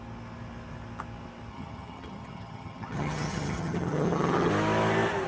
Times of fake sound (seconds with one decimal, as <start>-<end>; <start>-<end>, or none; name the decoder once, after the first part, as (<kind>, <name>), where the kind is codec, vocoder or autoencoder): 1.5-4.5 (vocoder, HiFi-GAN)